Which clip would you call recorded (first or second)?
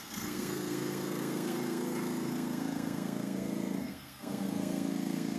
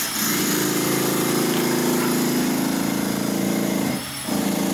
second